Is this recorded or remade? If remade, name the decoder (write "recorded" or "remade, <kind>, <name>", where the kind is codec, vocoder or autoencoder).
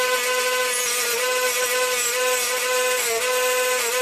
recorded